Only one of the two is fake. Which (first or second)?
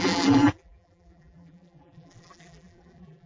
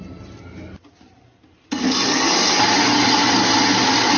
first